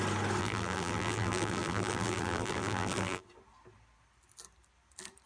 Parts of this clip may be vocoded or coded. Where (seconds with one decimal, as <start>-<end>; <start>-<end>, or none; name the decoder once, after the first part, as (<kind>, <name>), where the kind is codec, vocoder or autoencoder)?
0.4-3.2 (vocoder, BigVGAN v2)

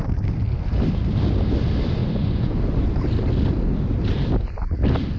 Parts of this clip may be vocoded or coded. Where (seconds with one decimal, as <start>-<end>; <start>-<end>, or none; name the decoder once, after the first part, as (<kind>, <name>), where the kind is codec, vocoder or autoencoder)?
2.0-2.6 (vocoder, Vocos)

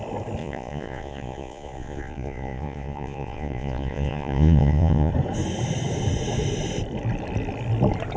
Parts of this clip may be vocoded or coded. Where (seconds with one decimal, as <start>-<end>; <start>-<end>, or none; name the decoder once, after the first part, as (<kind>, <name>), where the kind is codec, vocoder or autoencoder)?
0.4-5.1 (vocoder, Vocos)

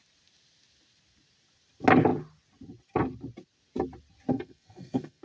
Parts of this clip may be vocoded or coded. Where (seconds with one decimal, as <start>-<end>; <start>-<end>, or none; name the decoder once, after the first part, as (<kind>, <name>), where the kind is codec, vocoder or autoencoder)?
4.3-5.2 (codec, SNAC)

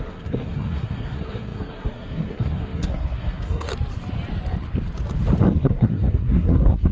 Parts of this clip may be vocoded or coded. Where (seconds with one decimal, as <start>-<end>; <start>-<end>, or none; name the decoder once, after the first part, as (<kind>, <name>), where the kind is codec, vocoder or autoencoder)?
0.0-3.7 (codec, SNAC); 5.4-6.9

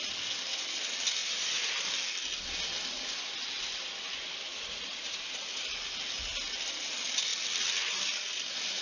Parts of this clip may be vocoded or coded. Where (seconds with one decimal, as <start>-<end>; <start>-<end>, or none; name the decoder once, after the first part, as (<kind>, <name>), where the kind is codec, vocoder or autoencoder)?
1.2-1.9 (vocoder, BigVGAN v2); 4.5-5.4